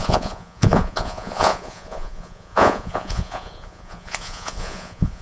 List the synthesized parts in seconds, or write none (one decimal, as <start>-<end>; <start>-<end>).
0.0-5.2